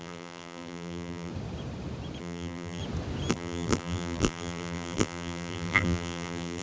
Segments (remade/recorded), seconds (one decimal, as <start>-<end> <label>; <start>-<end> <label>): 0.0-1.3 remade; 1.3-2.2 recorded; 2.2-2.8 remade; 2.8-3.3 recorded; 3.3-6.6 remade